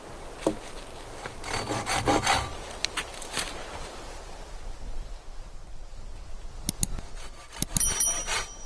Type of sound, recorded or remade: recorded